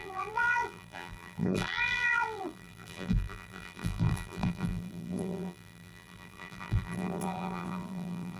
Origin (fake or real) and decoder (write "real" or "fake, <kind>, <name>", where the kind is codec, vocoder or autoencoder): fake, vocoder, BigVGAN v2